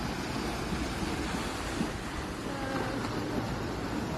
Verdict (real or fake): real